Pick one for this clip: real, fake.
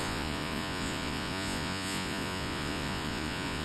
fake